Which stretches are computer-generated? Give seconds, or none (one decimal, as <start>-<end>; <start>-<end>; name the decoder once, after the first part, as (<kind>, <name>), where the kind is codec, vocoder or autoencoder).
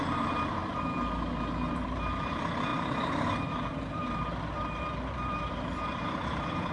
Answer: 0.0-0.6 (vocoder, BigVGAN v2); 1.7-6.7